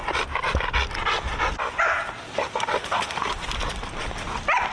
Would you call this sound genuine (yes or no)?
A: yes